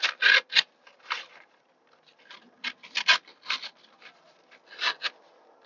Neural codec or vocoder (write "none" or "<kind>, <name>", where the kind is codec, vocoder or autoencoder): none